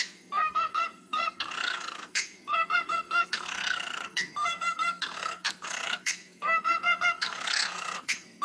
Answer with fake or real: fake